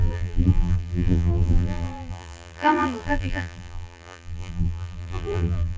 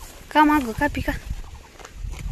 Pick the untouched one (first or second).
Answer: second